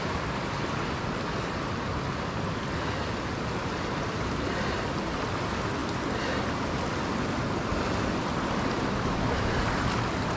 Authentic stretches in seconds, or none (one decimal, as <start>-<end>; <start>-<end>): 0.0-10.4